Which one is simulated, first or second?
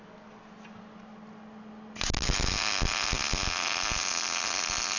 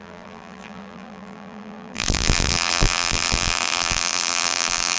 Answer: second